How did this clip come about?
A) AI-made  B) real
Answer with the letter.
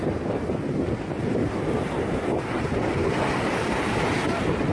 B